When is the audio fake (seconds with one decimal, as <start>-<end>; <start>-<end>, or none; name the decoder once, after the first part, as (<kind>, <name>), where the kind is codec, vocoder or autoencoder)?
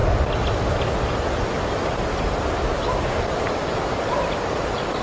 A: none